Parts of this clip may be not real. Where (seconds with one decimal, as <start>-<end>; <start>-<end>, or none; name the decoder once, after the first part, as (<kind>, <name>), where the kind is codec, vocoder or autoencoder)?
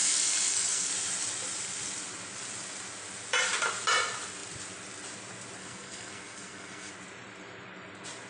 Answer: 0.0-0.9 (codec, SNAC); 5.6-6.9